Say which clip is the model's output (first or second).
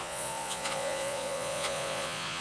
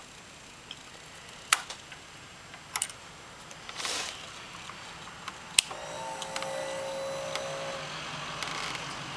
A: first